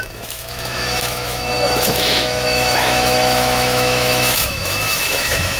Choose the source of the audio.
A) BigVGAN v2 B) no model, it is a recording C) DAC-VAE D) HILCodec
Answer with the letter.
C